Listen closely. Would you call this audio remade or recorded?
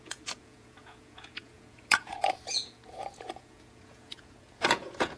remade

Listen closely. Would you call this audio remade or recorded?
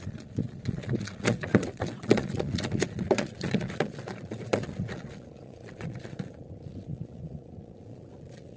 remade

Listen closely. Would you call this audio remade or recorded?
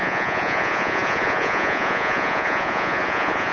remade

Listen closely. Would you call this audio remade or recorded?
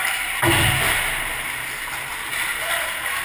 recorded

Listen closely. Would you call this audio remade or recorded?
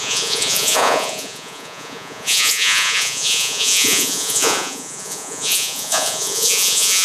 remade